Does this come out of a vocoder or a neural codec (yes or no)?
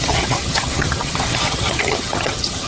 yes